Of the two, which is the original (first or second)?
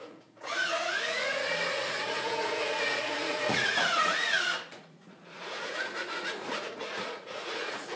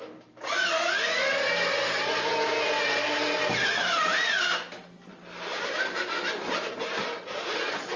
second